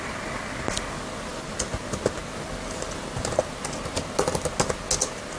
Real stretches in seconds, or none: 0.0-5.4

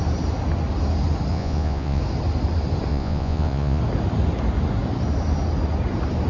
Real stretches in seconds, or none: 0.0-1.3; 2.0-2.9; 3.8-6.3

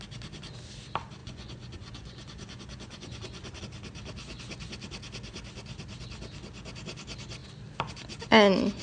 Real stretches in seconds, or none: 0.0-1.2; 3.6-8.8

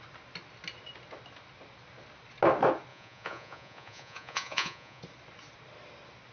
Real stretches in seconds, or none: 0.0-2.9; 5.0-6.3

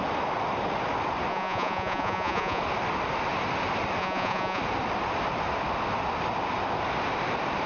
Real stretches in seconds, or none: 0.0-1.3; 2.6-4.0; 4.6-7.7

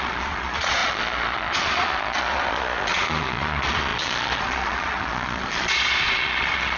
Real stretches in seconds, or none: none

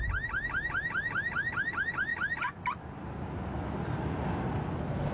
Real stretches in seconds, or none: 0.0-5.1

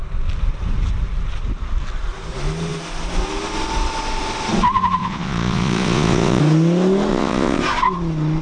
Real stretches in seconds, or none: 0.0-5.0; 6.4-7.1; 7.6-8.4